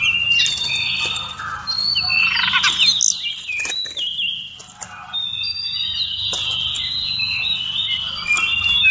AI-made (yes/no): no